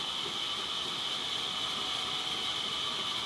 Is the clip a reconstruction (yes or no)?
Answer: no